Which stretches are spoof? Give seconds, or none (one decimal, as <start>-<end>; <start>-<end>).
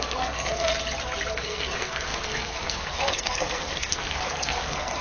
0.0-0.7; 1.3-5.0